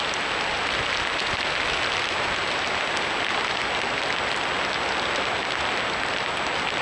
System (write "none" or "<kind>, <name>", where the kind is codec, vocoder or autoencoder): none